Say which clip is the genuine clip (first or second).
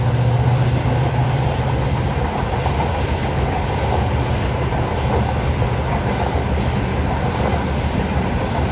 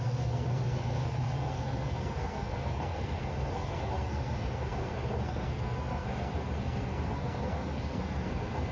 first